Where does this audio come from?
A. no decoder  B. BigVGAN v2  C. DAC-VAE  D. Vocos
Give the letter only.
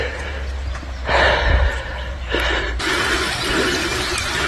B